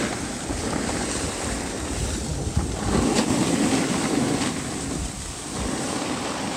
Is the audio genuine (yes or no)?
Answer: yes